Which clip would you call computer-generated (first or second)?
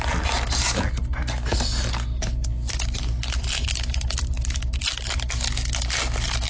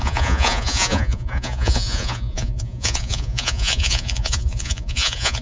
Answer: second